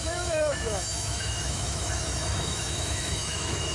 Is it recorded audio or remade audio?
remade